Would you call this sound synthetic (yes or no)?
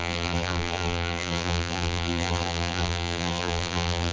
yes